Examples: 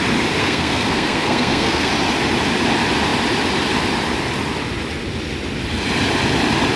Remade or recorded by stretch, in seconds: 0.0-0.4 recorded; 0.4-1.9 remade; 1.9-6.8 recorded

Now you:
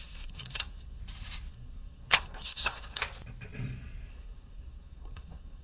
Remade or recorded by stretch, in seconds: 0.0-1.0 remade; 1.0-1.5 recorded; 1.5-3.0 remade; 3.0-4.1 recorded; 4.1-5.6 remade

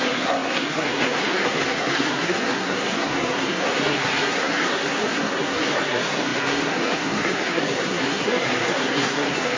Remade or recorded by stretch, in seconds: 0.0-9.6 remade

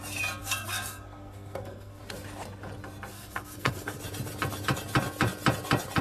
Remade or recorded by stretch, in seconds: 0.0-0.4 recorded; 0.4-2.0 remade; 2.0-3.1 recorded; 3.1-4.0 remade; 4.0-6.0 recorded

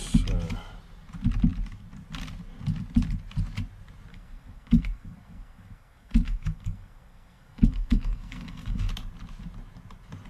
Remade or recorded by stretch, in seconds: 0.0-4.1 recorded; 4.1-8.9 remade; 8.9-10.3 recorded

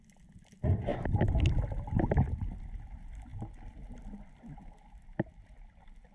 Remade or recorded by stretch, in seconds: 0.0-6.1 recorded

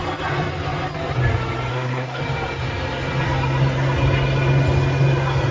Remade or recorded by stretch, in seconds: 0.0-1.7 recorded; 1.7-2.2 remade; 2.2-5.5 recorded